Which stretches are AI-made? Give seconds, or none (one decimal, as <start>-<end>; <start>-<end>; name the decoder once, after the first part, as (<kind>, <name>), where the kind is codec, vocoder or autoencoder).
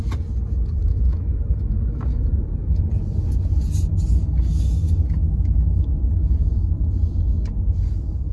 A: 0.8-1.4 (autoencoder, DAC-VAE); 5.2-5.9